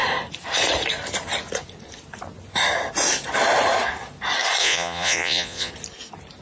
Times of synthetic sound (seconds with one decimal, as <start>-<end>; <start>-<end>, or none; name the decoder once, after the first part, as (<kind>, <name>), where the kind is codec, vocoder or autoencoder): 4.6-5.7 (vocoder, Vocos)